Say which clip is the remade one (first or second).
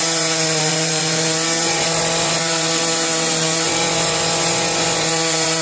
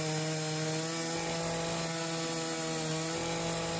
first